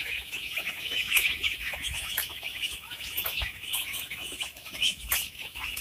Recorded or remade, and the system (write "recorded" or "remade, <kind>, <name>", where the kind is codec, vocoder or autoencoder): remade, autoencoder, DAC-VAE